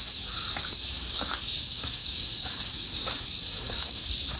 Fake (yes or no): yes